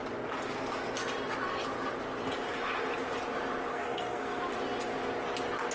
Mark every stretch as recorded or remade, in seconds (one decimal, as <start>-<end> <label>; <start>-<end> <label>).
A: 0.0-3.7 recorded; 3.7-4.4 remade; 4.4-5.7 recorded